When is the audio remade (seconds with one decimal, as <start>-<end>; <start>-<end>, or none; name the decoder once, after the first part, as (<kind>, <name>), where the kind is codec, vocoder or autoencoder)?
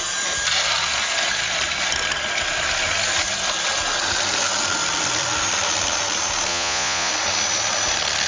6.5-7.1 (vocoder, Vocos)